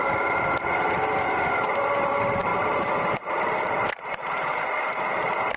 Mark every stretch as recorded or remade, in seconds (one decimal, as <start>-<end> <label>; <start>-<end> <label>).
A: 0.0-2.5 recorded; 2.5-4.6 remade; 4.6-5.6 recorded